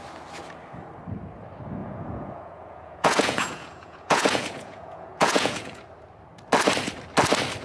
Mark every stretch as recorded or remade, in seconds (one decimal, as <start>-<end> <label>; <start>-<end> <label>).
0.0-1.8 recorded; 1.8-5.8 remade; 5.8-7.6 recorded